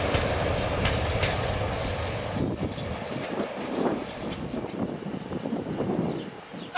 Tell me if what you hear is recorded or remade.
recorded